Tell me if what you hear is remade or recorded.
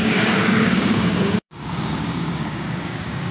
remade